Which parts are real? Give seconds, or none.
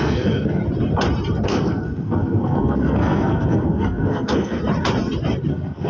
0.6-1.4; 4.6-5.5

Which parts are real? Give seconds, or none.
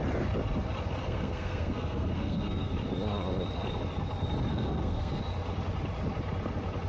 0.0-1.0; 2.7-4.5; 5.2-6.9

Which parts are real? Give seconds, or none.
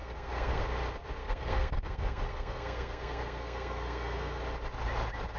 0.6-1.2; 4.4-5.4